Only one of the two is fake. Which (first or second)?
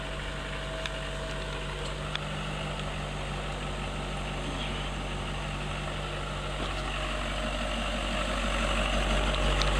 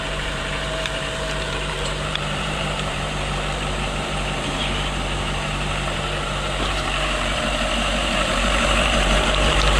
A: second